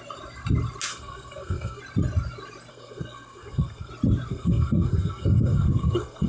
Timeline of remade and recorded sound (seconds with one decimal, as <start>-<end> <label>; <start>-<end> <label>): 0.0-0.9 recorded; 0.9-1.8 remade; 1.8-2.7 recorded; 2.7-3.9 remade; 3.9-4.3 recorded; 4.3-6.3 remade